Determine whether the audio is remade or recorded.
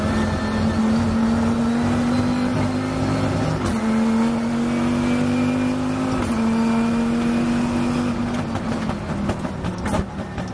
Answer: recorded